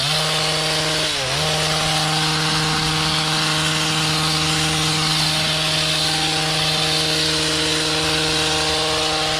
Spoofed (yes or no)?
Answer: no